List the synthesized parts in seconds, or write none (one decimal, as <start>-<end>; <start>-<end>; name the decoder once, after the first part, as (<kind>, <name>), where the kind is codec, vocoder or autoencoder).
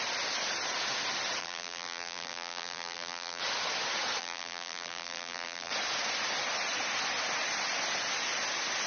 1.4-3.4 (vocoder, BigVGAN v2); 4.2-5.7